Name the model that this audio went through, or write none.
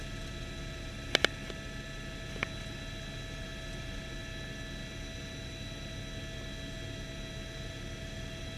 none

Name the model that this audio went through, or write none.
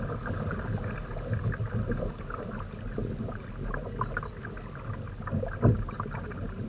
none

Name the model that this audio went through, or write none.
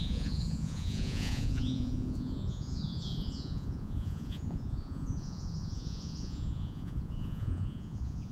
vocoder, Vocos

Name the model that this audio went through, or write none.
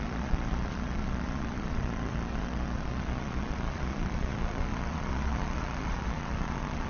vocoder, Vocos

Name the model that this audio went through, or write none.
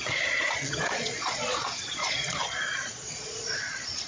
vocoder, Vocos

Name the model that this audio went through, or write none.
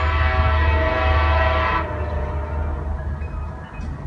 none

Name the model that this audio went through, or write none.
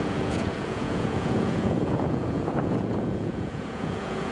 vocoder, Vocos